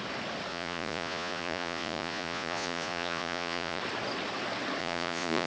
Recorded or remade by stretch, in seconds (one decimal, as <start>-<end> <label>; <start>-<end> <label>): 0.0-0.5 recorded; 0.5-3.8 remade; 3.8-4.8 recorded; 4.8-5.5 remade